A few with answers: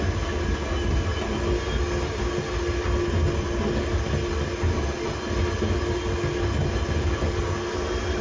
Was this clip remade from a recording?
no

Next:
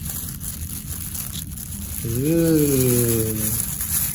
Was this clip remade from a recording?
no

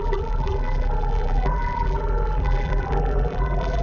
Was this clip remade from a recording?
yes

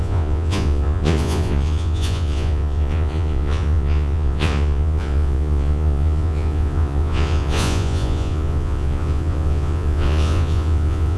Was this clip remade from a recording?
yes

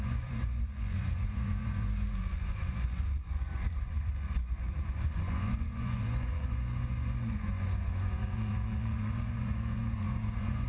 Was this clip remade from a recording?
yes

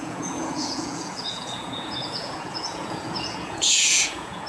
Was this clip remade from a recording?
yes